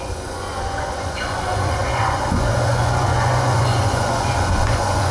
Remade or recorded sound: remade